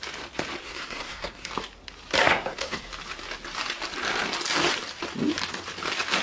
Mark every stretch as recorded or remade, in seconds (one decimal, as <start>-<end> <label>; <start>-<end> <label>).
0.0-0.6 recorded; 0.6-1.5 remade; 1.5-2.2 recorded; 2.2-2.9 remade; 2.9-6.2 recorded